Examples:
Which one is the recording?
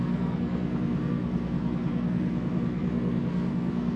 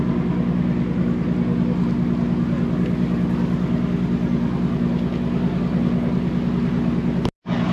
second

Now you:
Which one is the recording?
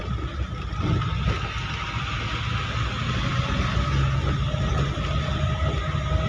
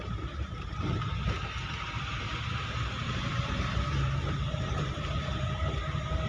first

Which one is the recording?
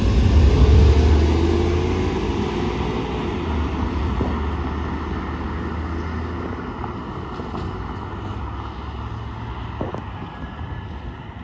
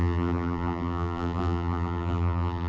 first